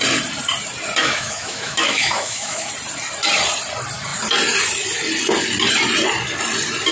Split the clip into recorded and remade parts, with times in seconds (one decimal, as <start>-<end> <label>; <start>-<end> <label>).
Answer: 0.0-1.0 recorded; 1.0-2.7 remade; 2.7-6.9 recorded